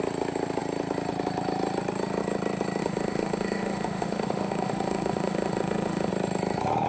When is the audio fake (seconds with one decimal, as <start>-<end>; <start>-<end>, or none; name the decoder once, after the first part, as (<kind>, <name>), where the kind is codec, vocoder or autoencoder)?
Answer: 2.8-6.1 (autoencoder, DAC-VAE)